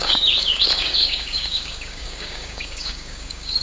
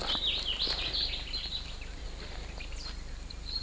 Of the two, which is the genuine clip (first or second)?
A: second